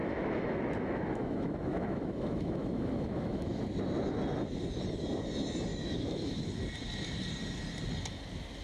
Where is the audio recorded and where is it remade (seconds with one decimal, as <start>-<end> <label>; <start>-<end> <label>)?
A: 0.0-3.6 remade; 3.6-5.7 recorded; 5.7-6.5 remade; 6.5-8.6 recorded